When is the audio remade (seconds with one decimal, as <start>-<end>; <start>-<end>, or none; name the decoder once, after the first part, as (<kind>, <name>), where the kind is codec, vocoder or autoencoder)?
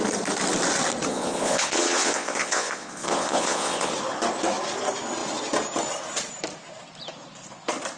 1.1-3.9 (vocoder, Vocos)